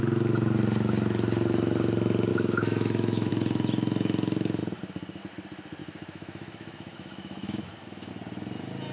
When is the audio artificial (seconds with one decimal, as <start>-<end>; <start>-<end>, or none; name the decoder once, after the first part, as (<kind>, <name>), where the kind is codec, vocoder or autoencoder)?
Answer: 2.3-3.3 (autoencoder, DAC-VAE); 5.8-8.1